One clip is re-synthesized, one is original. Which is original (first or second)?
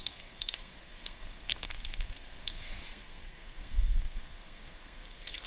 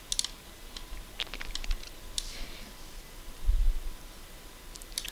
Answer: second